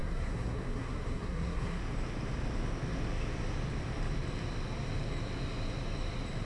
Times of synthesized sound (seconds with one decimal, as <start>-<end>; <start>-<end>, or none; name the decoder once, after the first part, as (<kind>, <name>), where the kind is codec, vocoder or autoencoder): 0.0-1.8 (codec, SNAC)